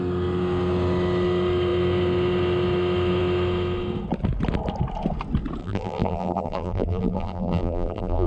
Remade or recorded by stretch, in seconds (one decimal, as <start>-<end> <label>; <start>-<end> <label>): 0.0-5.6 recorded; 5.6-8.3 remade